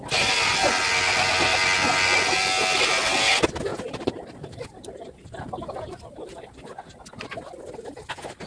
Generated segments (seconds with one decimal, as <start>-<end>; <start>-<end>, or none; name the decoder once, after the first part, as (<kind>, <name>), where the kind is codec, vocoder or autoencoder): none